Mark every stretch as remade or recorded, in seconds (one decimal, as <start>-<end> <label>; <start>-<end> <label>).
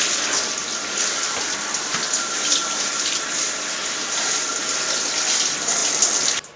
0.0-0.6 recorded; 0.6-4.6 remade; 4.6-6.6 recorded